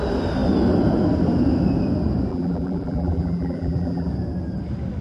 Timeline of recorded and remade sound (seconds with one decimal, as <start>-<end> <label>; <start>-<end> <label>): 0.0-2.3 recorded; 2.3-4.1 remade; 4.1-5.0 recorded